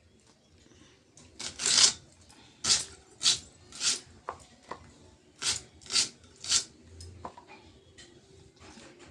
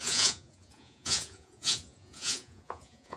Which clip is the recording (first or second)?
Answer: first